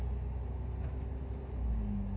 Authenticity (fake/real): real